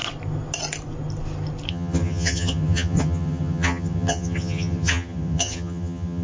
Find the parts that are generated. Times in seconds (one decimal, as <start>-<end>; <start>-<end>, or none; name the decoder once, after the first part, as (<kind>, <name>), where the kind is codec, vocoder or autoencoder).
1.7-6.2 (vocoder, HiFi-GAN)